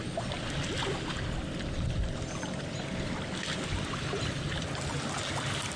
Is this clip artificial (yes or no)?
no